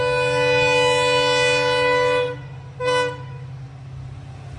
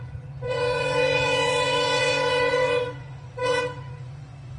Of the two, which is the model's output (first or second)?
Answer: second